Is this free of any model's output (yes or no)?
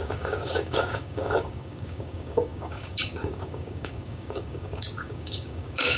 no